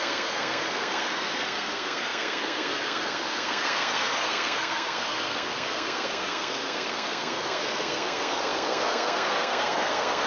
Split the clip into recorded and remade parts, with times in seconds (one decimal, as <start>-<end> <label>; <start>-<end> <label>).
0.0-10.3 remade